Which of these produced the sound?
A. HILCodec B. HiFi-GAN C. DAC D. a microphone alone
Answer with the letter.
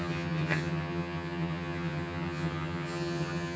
B